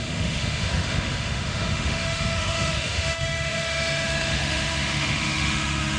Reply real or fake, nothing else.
fake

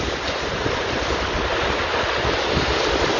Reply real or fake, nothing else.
fake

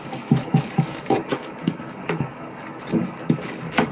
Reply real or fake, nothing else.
fake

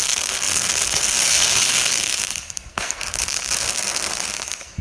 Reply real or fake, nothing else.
fake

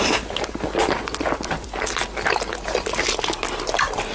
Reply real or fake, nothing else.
real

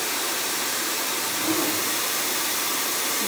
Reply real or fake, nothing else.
fake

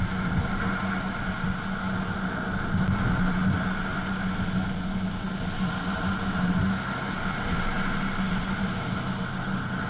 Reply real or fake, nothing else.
real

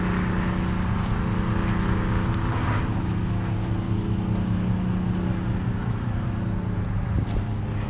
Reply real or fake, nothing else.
real